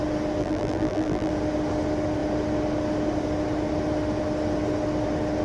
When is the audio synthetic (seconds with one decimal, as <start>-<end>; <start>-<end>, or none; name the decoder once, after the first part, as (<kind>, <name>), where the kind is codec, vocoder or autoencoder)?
0.4-1.3 (vocoder, BigVGAN v2)